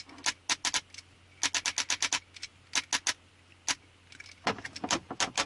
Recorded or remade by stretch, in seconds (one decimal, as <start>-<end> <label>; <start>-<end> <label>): 0.0-5.5 recorded